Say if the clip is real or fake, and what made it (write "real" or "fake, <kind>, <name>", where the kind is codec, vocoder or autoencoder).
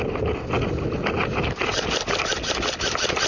real